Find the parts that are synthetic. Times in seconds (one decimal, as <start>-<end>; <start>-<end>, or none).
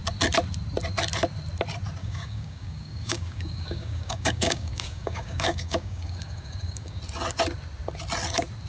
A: 2.0-7.0